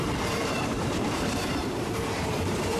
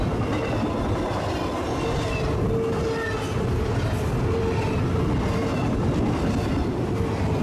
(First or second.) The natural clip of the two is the second